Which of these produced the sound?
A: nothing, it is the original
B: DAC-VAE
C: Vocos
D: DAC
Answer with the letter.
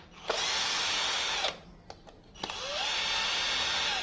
A